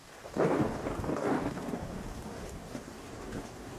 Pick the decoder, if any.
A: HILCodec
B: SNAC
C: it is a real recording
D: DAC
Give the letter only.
D